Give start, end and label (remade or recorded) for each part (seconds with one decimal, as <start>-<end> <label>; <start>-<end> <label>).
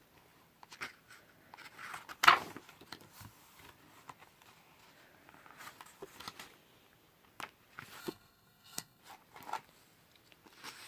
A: 0.0-8.0 recorded; 8.0-9.0 remade; 9.0-10.9 recorded